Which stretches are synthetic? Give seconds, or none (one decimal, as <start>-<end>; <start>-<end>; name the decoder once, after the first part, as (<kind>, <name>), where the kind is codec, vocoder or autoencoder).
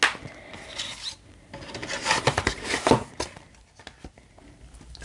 1.8-5.0 (vocoder, BigVGAN v2)